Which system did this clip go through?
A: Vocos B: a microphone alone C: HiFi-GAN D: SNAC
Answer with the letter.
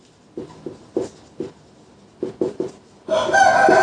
B